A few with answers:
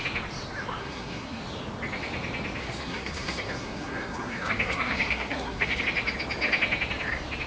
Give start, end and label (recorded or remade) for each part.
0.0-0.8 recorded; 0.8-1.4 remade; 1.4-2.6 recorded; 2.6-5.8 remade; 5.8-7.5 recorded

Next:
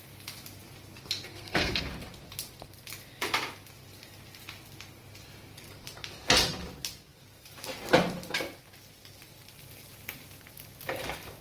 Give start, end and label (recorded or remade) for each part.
0.0-1.3 recorded; 1.3-1.8 remade; 1.8-11.4 recorded

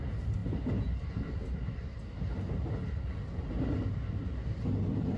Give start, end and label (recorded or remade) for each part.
0.0-5.2 recorded

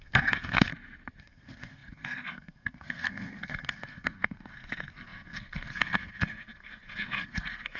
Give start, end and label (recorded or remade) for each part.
0.0-0.7 remade; 0.7-1.2 recorded; 1.2-7.8 remade

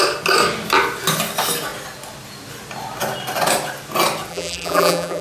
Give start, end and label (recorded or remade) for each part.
0.0-4.3 recorded; 4.3-5.2 remade

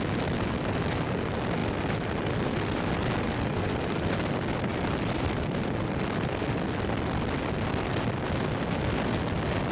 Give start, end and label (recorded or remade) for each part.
0.0-1.6 recorded; 1.6-4.1 remade; 4.1-4.7 recorded; 4.7-6.4 remade; 6.4-9.7 recorded

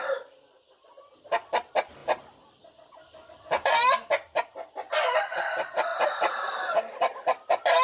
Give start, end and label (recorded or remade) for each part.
0.0-7.8 recorded

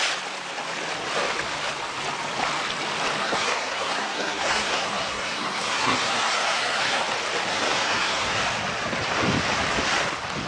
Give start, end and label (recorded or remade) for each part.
0.0-3.2 recorded; 3.2-7.0 remade; 7.0-7.5 recorded; 7.5-8.4 remade; 8.4-10.5 recorded